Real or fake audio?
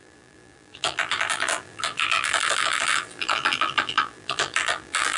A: fake